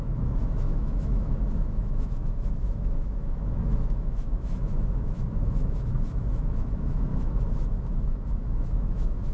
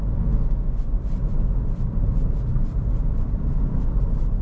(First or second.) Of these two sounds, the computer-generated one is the first